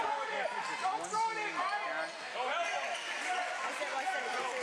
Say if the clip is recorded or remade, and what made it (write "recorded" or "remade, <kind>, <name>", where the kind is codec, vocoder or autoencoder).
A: recorded